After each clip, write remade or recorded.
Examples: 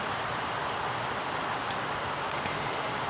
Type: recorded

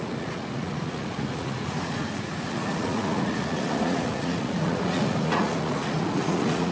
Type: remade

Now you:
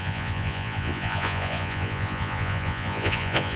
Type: remade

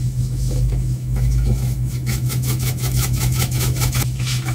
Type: remade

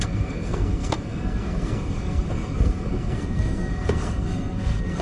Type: remade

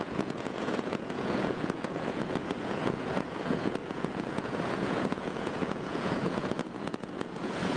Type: remade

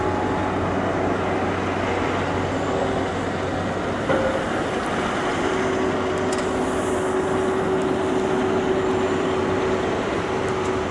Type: recorded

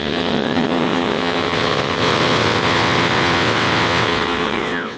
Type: remade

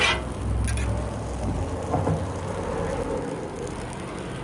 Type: recorded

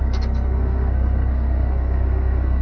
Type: remade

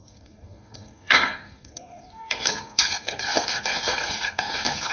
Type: remade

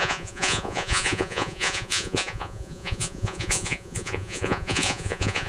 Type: remade